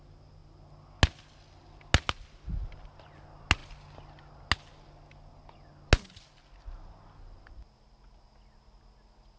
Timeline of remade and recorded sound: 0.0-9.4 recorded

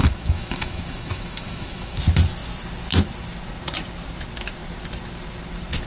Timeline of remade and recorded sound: 0.0-2.0 remade; 2.0-5.9 recorded